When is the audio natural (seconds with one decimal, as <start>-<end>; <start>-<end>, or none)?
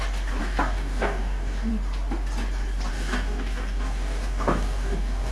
0.0-0.4; 1.7-2.9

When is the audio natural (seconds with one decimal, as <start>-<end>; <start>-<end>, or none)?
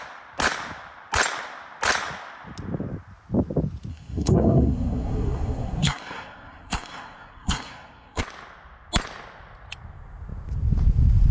0.0-3.9; 8.2-11.3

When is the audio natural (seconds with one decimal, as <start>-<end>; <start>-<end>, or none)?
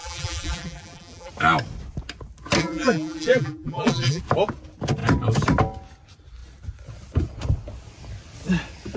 1.3-2.6; 4.2-9.0